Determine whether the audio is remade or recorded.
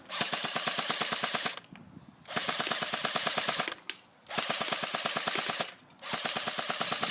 recorded